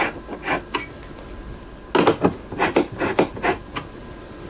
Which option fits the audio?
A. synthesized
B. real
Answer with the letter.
B